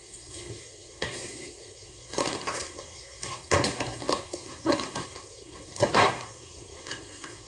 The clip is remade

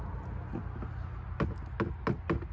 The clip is recorded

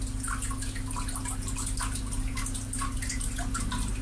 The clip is recorded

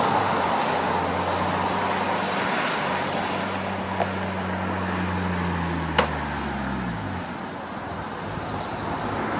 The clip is recorded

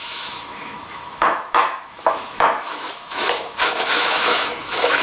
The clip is remade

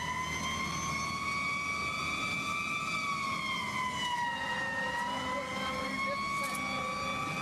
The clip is recorded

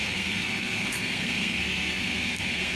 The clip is remade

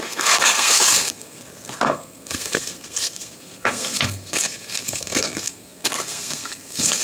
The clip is remade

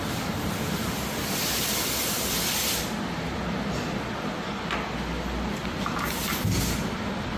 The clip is recorded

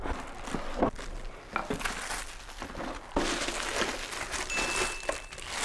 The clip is recorded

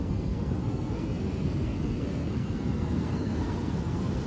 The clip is remade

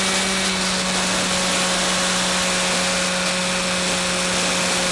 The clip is recorded